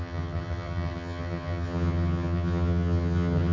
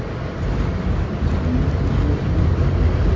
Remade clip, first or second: first